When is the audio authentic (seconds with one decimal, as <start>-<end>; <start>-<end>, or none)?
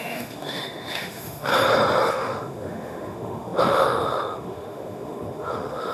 1.5-2.1